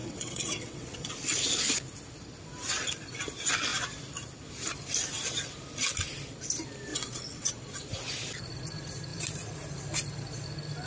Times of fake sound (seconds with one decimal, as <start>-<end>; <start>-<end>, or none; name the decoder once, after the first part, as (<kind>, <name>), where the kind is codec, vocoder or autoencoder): 0.0-1.1 (vocoder, WaveNeXt); 6.9-7.5

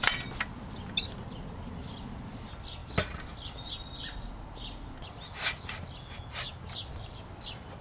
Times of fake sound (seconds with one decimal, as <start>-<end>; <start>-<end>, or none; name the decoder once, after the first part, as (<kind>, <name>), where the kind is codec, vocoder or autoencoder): none

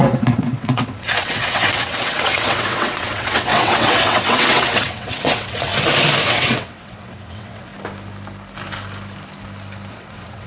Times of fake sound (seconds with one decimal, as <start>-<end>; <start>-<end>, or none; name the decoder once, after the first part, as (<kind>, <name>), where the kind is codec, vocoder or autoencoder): 0.0-5.7 (vocoder, WaveNeXt); 6.3-7.7; 9.9-10.5

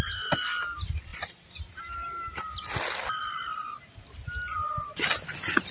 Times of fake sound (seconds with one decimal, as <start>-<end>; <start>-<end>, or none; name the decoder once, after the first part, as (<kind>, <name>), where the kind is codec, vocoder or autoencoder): none

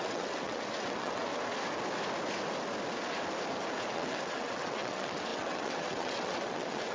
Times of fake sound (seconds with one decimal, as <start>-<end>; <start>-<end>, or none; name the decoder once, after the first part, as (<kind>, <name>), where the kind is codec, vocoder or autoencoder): 0.0-1.3 (vocoder, WaveNeXt); 3.9-6.9

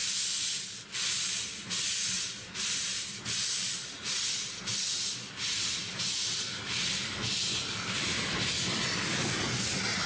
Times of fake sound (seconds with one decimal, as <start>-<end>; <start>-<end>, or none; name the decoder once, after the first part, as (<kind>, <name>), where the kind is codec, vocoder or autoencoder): none